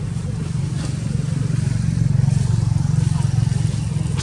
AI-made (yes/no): no